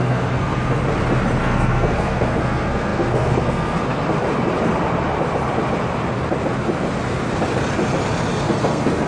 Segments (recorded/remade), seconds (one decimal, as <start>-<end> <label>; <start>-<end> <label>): 0.0-0.8 remade; 0.8-1.4 recorded; 1.4-4.0 remade; 4.0-8.4 recorded; 8.4-9.1 remade